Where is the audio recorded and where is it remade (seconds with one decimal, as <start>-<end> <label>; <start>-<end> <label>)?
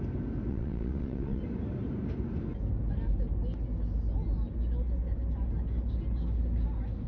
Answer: 0.0-0.5 recorded; 0.5-1.4 remade; 1.4-7.1 recorded